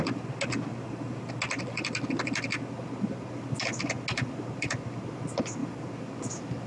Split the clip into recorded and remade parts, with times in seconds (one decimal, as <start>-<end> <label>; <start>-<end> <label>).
0.0-6.7 recorded